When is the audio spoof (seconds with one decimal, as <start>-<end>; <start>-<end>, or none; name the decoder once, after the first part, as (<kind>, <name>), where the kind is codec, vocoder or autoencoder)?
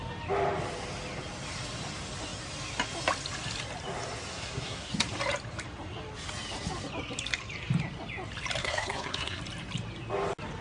4.3-4.9 (codec, SNAC); 8.6-9.4